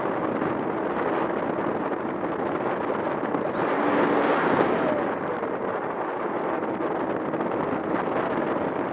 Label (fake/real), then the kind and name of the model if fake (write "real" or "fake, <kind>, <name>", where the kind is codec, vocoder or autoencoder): real